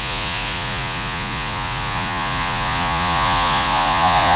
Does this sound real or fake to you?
fake